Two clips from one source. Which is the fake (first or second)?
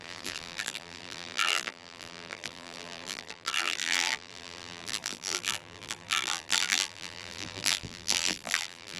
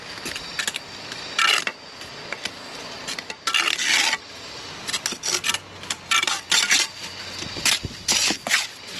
first